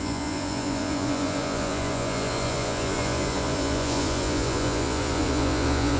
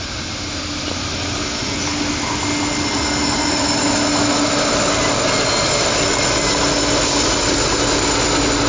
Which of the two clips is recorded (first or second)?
second